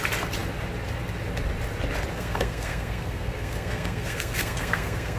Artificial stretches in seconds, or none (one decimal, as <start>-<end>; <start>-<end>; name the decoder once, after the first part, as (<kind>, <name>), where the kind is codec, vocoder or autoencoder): 2.1-5.2 (codec, SNAC)